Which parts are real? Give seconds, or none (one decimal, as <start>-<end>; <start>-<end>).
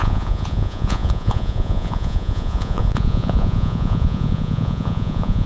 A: none